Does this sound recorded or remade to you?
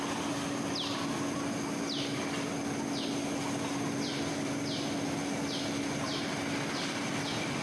recorded